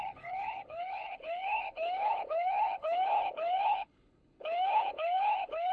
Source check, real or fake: fake